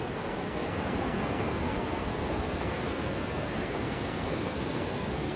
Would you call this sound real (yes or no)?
no